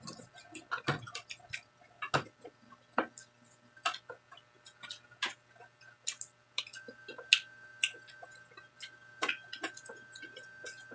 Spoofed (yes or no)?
no